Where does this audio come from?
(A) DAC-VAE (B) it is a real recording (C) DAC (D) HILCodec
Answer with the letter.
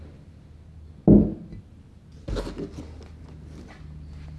B